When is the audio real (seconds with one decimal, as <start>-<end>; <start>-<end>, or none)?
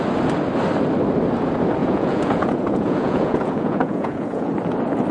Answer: 0.0-1.8; 4.5-5.1